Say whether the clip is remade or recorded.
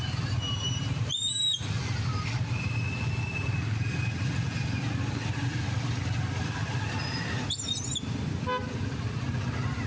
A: recorded